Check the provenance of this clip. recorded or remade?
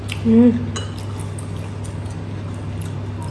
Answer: recorded